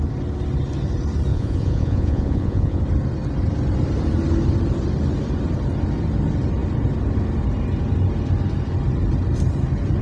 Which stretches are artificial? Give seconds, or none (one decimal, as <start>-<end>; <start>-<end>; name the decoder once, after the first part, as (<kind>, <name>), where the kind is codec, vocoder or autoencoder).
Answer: 1.3-2.8 (vocoder, Vocos)